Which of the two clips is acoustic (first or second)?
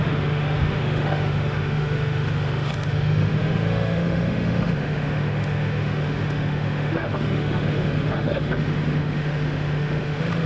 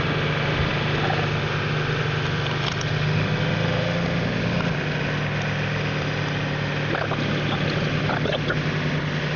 second